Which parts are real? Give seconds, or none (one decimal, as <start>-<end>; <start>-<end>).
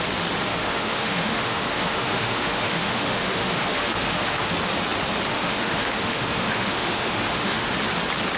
0.0-0.5; 4.5-5.3; 7.7-8.4